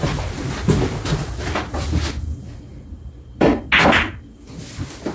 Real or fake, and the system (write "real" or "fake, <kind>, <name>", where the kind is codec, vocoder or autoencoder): real